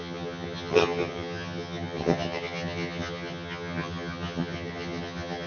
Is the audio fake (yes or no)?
yes